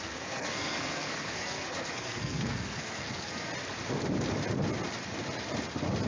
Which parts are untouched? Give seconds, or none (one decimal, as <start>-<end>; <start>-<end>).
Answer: 3.5-6.1

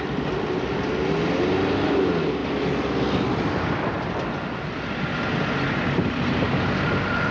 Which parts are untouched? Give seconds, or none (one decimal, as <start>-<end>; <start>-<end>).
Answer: 0.0-7.3

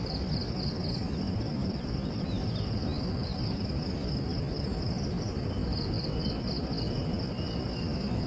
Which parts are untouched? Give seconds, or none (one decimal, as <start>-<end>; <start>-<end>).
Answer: 0.0-1.6; 2.2-3.2; 3.7-5.4; 6.3-8.3

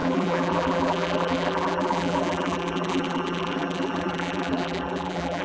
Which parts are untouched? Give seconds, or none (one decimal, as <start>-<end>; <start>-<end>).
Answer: none

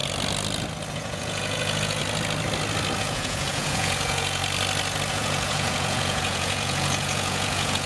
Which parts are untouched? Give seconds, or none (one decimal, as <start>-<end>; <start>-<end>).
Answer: 0.0-0.9; 2.0-3.0; 4.4-5.1

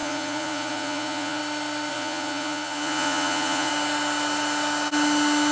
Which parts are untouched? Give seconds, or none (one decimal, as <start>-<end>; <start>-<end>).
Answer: 1.4-1.9; 3.7-5.5

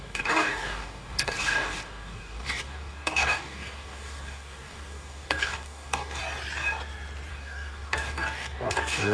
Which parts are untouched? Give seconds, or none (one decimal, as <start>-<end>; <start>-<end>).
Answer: 6.2-7.3